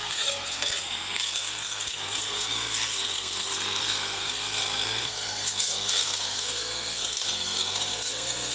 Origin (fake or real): fake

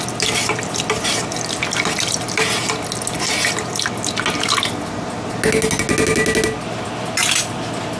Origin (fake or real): real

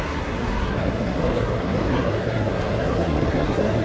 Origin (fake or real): fake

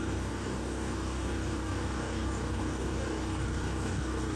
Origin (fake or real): fake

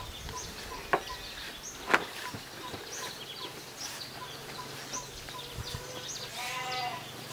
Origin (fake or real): real